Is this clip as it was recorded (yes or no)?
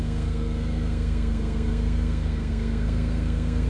no